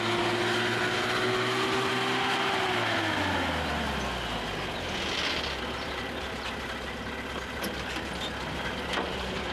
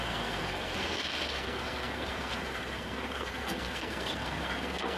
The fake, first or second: second